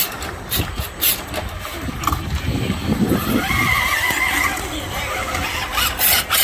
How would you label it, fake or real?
real